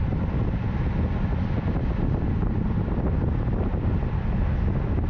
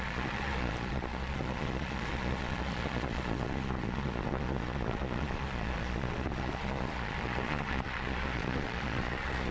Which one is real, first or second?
first